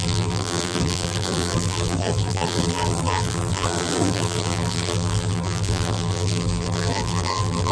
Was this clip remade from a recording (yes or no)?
yes